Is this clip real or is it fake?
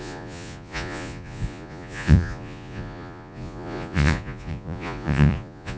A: fake